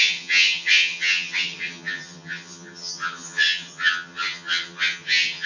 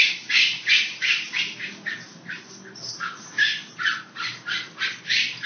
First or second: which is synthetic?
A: first